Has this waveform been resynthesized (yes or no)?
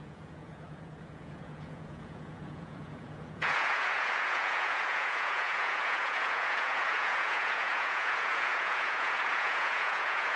yes